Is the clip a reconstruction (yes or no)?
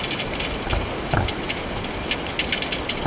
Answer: no